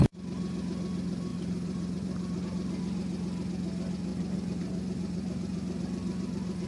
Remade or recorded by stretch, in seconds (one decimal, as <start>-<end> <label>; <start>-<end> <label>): 0.0-1.3 recorded; 1.3-2.4 remade; 2.4-4.1 recorded; 4.1-6.7 remade